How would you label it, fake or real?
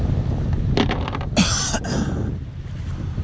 real